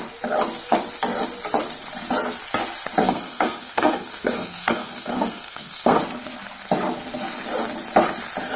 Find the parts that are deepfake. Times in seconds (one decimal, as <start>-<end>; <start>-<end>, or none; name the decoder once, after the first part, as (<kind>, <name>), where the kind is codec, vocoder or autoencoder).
3.0-6.0 (codec, SNAC)